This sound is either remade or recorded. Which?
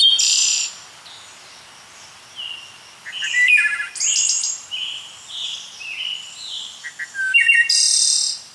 recorded